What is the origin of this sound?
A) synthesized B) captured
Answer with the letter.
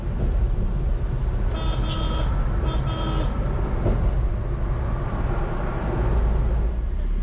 B